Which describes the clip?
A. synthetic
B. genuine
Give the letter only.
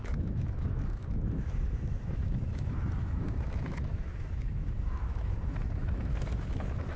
A